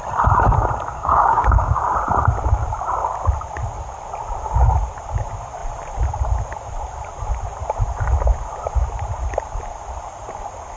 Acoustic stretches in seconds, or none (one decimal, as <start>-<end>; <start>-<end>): 0.0-0.9; 1.8-10.8